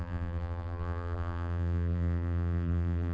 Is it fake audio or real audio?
fake